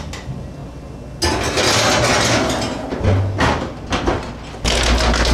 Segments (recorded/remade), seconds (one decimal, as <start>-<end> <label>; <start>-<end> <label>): 0.0-5.3 recorded